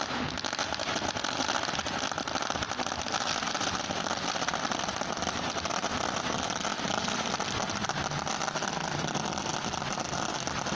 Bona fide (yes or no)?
yes